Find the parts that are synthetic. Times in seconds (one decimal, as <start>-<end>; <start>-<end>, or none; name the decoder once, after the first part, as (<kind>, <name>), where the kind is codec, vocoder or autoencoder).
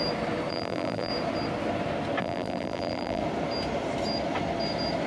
0.5-1.1 (vocoder, BigVGAN v2); 2.2-3.2